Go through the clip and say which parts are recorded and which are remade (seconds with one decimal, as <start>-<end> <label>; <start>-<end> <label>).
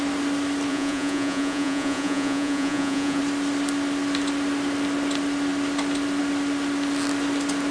0.0-0.7 recorded; 0.7-3.2 remade; 3.2-7.7 recorded